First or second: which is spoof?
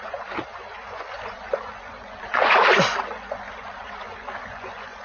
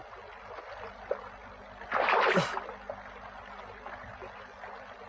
first